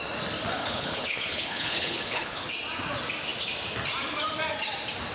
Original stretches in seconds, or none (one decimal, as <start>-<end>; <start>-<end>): 0.0-0.6; 2.5-5.1